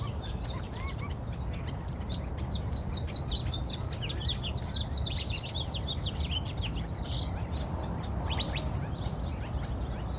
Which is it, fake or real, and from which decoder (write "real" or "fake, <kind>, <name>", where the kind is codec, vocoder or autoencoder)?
real